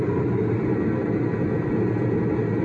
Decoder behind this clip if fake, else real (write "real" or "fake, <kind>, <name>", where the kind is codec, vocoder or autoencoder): real